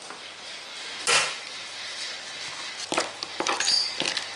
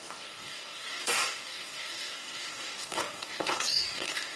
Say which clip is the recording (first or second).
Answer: first